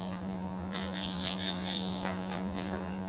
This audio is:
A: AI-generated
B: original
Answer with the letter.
A